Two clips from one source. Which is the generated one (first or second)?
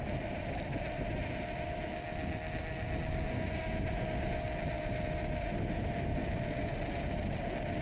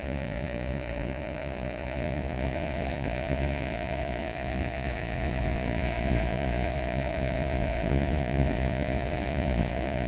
second